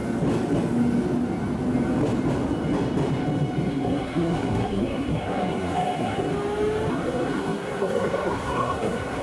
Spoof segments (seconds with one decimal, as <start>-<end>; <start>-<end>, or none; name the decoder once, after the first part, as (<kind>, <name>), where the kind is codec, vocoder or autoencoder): 3.7-6.3 (codec, SNAC); 6.9-9.2